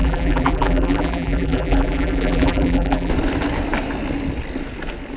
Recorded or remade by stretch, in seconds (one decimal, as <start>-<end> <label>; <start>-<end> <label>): 0.0-3.1 remade; 3.1-5.2 recorded